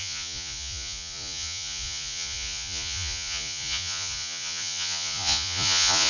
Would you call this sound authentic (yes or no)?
no